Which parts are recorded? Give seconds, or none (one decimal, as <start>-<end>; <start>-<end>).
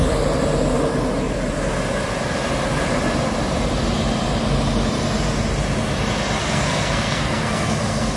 0.0-6.4